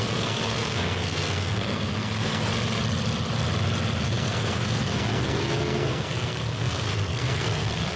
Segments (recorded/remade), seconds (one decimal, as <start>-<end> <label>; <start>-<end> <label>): 0.0-2.5 remade; 2.5-4.0 recorded; 4.0-8.0 remade

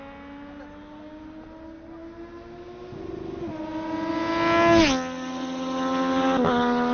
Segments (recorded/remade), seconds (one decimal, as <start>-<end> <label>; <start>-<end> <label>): 0.0-6.9 recorded

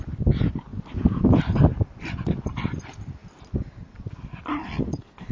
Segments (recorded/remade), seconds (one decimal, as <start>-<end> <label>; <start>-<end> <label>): 0.0-5.3 recorded

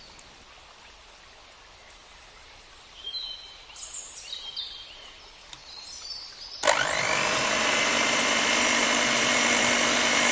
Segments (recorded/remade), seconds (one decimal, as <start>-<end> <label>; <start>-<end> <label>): 0.0-2.0 recorded; 2.0-4.5 remade; 4.5-5.6 recorded; 5.6-9.7 remade; 9.7-10.3 recorded